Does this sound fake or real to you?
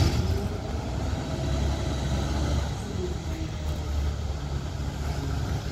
real